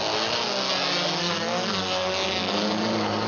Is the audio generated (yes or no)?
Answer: no